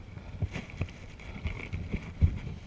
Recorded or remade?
recorded